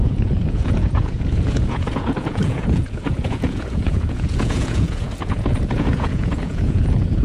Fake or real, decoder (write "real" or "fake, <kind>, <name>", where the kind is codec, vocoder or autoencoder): fake, vocoder, Vocos